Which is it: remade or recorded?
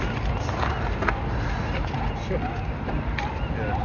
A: recorded